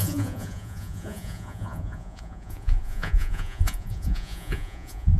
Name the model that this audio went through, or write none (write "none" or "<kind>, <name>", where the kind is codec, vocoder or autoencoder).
vocoder, Vocos